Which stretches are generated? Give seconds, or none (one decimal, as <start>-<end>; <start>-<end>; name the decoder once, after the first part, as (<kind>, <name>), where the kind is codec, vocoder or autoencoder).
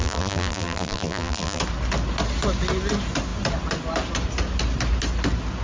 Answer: 0.0-1.6 (vocoder, BigVGAN v2)